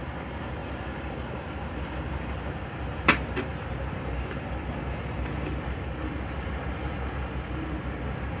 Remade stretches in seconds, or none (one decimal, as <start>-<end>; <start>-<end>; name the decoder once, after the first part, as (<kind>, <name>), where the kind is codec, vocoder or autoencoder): 0.6-5.6 (vocoder, BigVGAN v2)